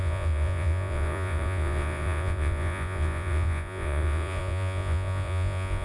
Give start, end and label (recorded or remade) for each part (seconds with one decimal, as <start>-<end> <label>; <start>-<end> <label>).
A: 0.0-5.8 remade